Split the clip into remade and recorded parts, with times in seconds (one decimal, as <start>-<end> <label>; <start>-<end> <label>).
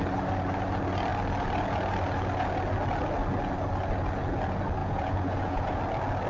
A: 0.0-4.8 recorded; 4.8-5.8 remade; 5.8-6.3 recorded